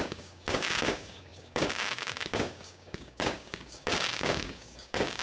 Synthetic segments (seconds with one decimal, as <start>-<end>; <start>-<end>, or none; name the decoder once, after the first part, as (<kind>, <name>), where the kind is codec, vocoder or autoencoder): 0.0-5.2 (codec, DAC)